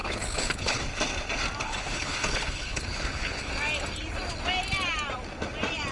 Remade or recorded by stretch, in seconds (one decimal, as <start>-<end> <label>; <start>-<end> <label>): 0.0-0.8 remade; 0.8-1.6 recorded; 1.6-3.5 remade; 3.5-5.9 recorded

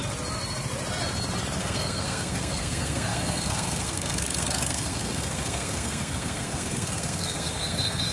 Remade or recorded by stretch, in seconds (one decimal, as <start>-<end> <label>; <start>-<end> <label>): 0.0-1.6 recorded; 1.6-8.1 remade

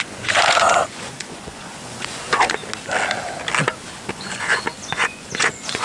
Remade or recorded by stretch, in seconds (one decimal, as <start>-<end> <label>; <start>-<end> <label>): 0.0-2.6 remade; 2.6-4.1 recorded; 4.1-5.8 remade